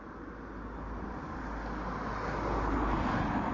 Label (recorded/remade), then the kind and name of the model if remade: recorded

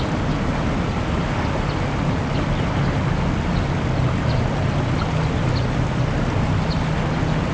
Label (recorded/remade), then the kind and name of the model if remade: recorded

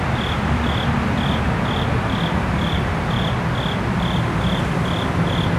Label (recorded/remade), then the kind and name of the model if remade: recorded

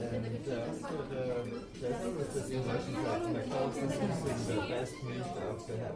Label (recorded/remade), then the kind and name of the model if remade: recorded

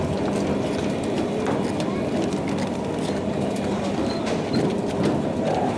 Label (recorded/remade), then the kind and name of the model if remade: recorded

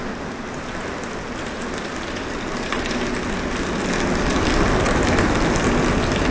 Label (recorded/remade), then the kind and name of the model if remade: recorded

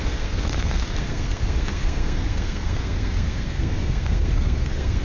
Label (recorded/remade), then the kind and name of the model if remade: remade, codec, SNAC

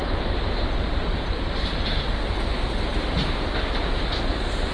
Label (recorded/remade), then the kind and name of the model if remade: recorded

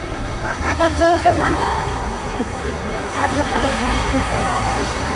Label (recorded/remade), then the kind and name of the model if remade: remade, codec, SNAC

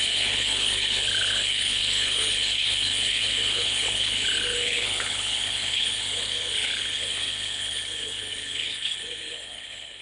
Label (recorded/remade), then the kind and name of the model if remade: remade, codec, HILCodec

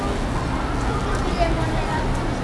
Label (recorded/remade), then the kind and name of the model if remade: recorded